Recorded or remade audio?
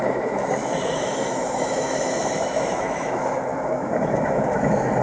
remade